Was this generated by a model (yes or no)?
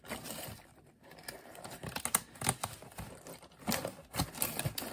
no